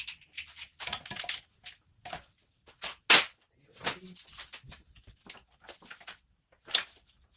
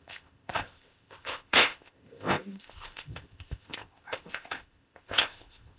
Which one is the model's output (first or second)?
second